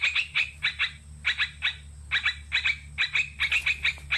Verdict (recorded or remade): recorded